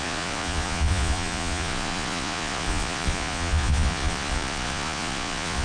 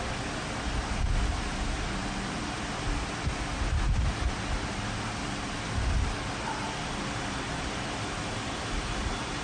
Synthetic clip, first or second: first